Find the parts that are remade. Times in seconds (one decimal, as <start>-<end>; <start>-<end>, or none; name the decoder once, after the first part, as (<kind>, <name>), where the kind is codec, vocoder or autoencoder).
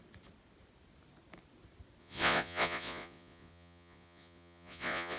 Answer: 2.0-5.2 (vocoder, Vocos)